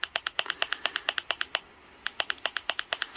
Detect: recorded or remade recorded